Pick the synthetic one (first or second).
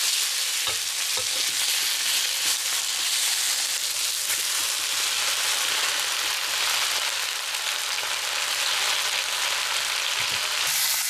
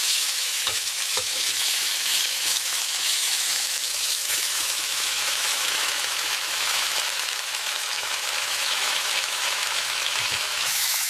second